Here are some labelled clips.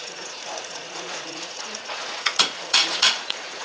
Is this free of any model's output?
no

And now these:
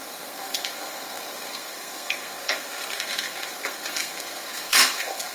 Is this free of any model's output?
no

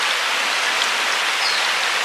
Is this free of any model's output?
yes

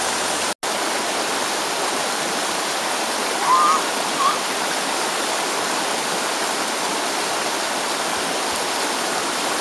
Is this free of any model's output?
yes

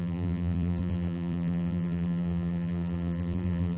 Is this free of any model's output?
no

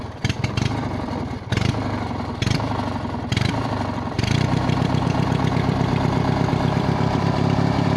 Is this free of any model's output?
no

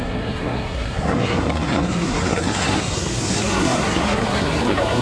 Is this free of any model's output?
no